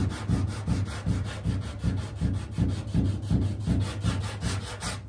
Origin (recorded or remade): recorded